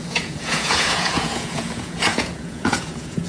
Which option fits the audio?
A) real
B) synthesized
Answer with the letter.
B